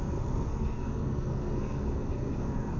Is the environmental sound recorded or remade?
remade